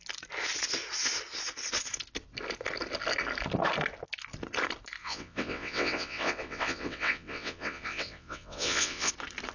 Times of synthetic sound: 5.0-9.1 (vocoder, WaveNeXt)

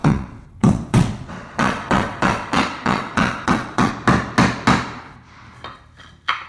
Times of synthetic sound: 0.0-3.9 (vocoder, WaveNeXt)